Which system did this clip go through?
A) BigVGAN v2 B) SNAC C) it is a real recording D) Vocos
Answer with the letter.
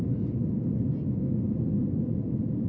C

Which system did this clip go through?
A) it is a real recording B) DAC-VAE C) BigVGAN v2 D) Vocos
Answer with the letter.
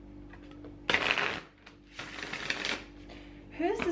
A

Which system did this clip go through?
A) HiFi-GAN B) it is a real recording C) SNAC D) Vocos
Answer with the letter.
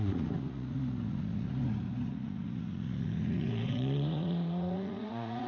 D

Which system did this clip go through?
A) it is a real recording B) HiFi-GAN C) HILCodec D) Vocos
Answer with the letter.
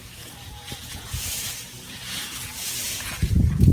D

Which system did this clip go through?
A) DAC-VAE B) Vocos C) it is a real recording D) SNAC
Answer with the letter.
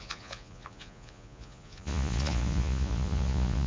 B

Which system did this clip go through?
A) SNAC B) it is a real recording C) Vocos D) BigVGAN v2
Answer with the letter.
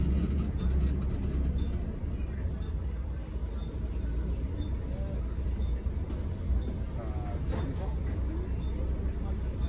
B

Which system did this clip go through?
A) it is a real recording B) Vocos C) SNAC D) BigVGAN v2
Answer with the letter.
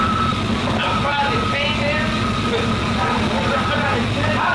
A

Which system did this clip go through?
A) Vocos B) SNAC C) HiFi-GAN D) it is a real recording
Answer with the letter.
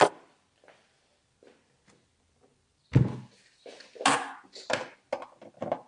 D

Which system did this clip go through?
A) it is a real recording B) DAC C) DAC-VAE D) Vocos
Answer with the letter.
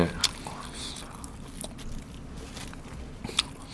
A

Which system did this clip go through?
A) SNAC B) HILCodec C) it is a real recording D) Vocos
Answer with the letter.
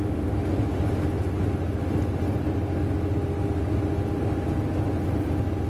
C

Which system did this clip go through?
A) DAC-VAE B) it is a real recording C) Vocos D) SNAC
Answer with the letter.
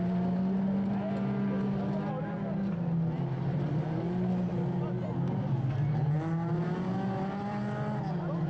B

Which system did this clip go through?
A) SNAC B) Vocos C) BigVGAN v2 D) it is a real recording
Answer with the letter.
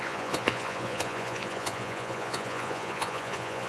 B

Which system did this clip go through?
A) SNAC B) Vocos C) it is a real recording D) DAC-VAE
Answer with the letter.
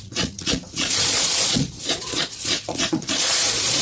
B